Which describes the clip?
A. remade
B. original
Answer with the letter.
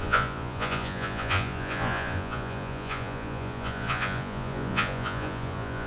A